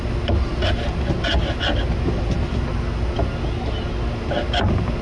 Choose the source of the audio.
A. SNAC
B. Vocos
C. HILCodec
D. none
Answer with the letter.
D